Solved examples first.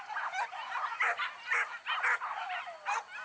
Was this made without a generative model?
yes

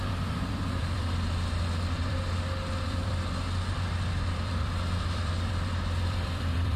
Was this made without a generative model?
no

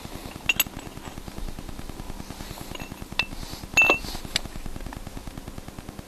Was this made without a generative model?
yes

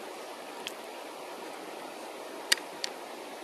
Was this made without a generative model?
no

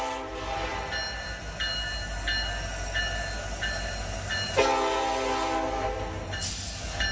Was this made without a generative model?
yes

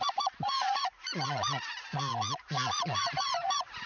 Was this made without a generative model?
no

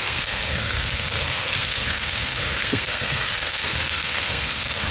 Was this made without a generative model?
no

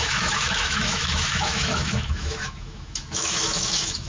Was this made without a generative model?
no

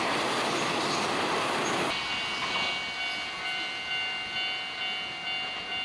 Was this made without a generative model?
yes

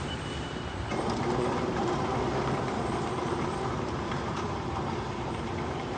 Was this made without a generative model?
no